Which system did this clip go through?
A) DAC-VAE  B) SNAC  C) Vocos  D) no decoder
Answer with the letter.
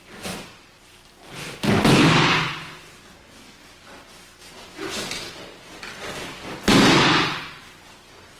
D